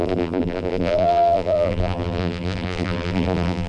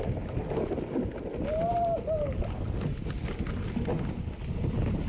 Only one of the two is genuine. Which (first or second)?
second